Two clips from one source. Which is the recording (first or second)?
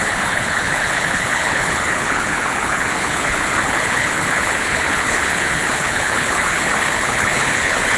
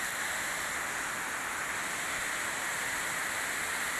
second